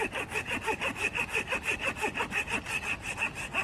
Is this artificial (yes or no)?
no